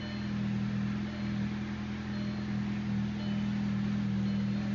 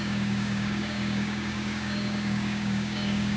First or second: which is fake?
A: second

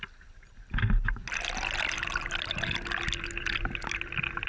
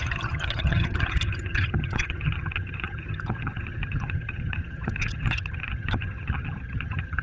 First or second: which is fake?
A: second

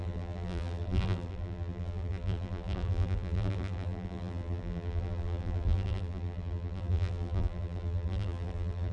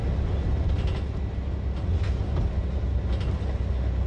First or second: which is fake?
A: first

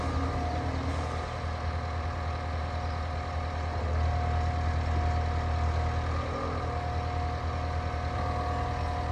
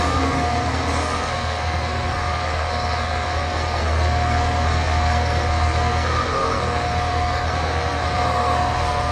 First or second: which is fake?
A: second